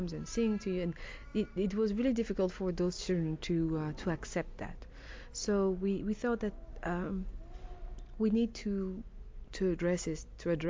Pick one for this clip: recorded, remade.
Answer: recorded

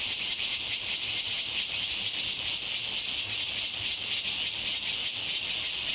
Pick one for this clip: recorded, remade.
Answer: recorded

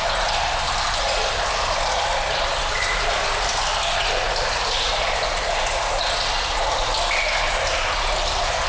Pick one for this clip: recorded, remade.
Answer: recorded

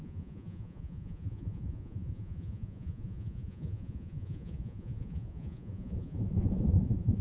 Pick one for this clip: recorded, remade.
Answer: remade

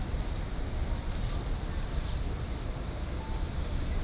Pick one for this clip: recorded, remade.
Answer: remade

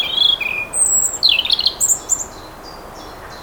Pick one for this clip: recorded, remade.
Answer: recorded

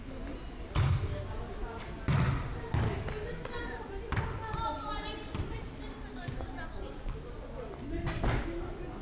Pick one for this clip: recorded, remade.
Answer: recorded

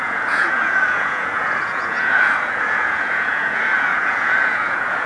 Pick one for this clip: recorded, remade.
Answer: remade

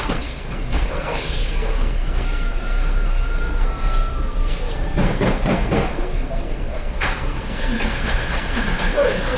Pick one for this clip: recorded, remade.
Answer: remade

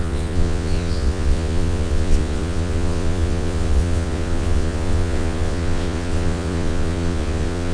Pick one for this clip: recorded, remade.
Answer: remade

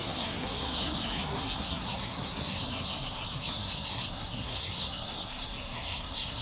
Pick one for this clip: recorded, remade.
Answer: remade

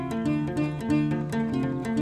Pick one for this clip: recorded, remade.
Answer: recorded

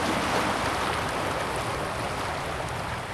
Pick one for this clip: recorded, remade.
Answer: recorded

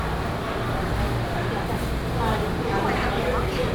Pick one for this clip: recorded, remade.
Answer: recorded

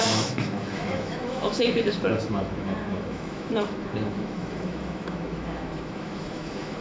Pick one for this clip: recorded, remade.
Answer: remade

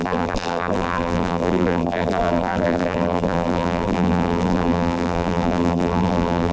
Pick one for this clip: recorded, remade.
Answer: remade